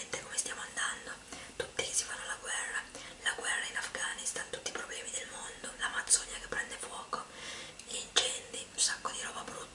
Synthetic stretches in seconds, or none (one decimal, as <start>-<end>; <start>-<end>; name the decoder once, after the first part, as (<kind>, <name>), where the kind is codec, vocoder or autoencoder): none